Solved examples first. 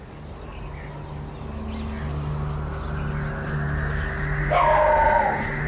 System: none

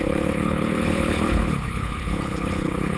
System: codec, HILCodec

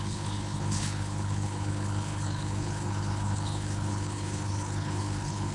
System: codec, HILCodec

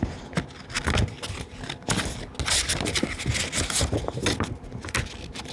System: none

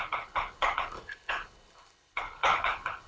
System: codec, HILCodec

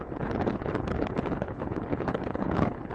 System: codec, HILCodec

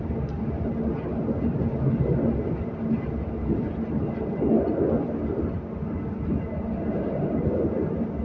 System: none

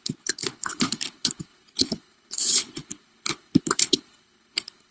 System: codec, HILCodec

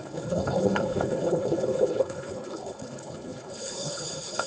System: codec, HILCodec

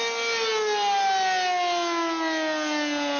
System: none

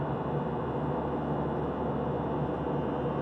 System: none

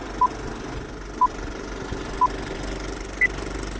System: none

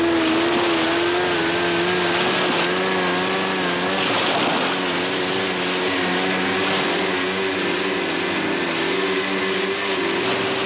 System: none